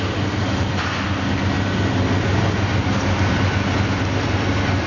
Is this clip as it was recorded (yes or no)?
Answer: yes